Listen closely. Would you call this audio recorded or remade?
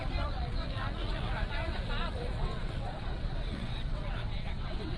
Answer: remade